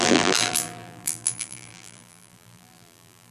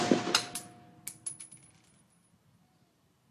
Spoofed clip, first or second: first